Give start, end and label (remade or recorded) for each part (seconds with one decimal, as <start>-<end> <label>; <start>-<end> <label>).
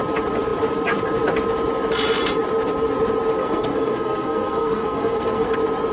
0.0-3.4 recorded; 3.4-5.5 remade; 5.5-5.9 recorded